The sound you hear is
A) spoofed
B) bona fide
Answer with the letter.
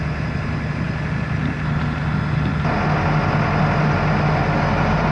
B